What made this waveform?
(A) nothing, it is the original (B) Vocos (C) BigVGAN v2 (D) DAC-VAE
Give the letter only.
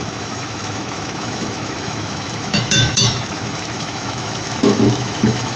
D